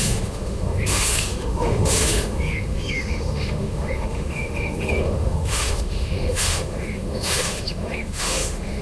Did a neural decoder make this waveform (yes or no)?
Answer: yes